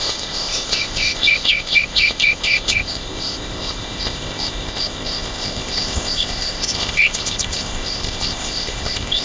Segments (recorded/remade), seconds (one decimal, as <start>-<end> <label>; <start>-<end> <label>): 0.0-9.2 remade